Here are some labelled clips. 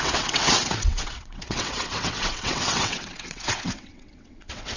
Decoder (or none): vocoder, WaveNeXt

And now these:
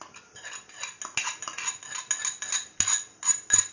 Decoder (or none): none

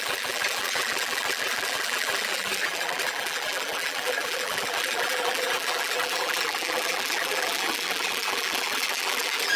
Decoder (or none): vocoder, BigVGAN v2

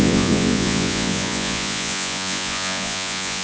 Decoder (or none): vocoder, Vocos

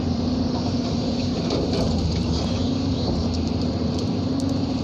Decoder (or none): vocoder, BigVGAN v2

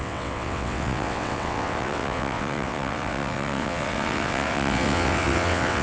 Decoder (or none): vocoder, WaveNeXt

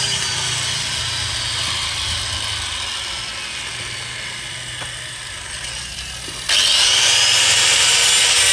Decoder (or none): none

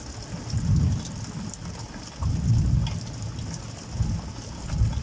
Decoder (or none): none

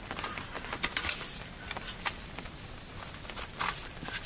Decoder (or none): none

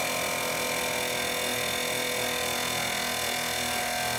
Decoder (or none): none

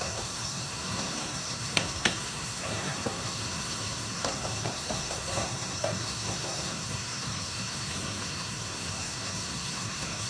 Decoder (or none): codec, SNAC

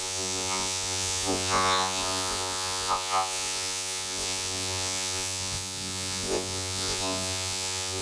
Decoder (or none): vocoder, Vocos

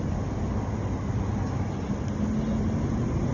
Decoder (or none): none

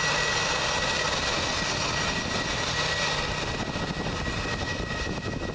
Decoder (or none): none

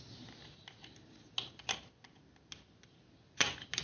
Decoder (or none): none